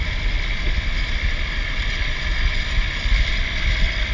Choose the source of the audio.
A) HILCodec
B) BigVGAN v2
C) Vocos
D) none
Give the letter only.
D